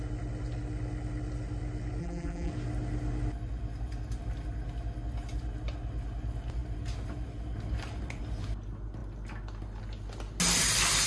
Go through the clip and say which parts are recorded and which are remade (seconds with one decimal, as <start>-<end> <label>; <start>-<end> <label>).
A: 0.0-2.0 recorded; 2.0-2.5 remade; 2.5-11.1 recorded